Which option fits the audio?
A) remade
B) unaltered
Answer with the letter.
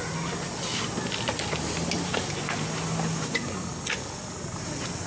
B